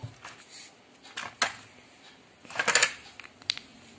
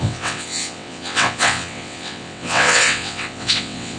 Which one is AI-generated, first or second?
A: second